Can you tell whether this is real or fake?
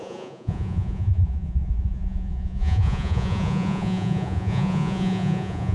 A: fake